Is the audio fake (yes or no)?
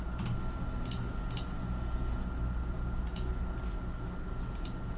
no